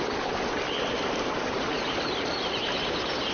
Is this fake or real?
real